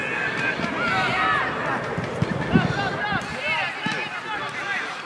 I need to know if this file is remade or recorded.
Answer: recorded